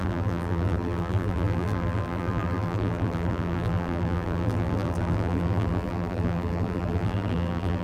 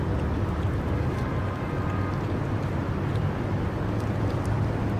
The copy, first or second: first